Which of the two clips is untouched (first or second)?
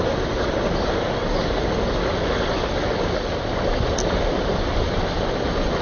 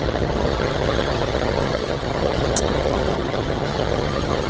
first